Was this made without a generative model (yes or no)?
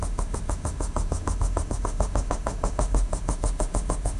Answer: no